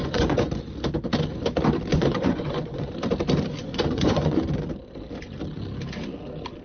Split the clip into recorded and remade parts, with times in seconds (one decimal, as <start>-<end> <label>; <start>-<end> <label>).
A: 0.0-0.5 remade; 0.5-1.9 recorded; 1.9-2.9 remade; 2.9-3.6 recorded; 3.6-4.4 remade; 4.4-6.6 recorded